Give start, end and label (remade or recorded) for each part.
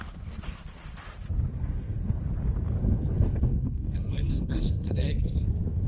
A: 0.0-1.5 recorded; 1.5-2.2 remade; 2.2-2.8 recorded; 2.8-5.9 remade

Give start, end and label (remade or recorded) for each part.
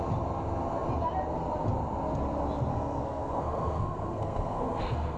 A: 0.0-2.7 recorded; 2.7-5.2 remade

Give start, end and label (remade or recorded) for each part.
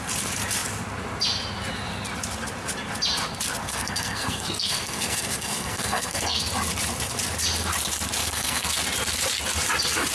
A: 0.0-3.6 recorded; 3.6-6.4 remade; 6.4-8.2 recorded; 8.2-8.8 remade; 8.8-10.1 recorded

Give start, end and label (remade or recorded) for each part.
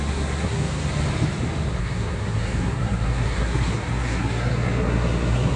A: 0.0-0.9 remade; 0.9-1.8 recorded; 1.8-5.6 remade